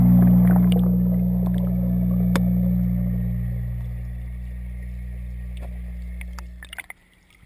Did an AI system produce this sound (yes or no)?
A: no